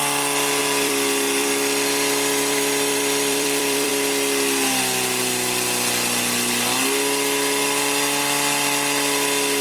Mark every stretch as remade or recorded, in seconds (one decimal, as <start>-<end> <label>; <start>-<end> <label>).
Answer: 0.0-0.6 recorded; 0.6-3.9 remade; 3.9-9.6 recorded